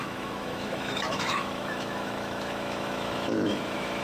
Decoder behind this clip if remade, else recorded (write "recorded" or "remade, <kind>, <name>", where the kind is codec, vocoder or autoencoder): remade, autoencoder, DAC-VAE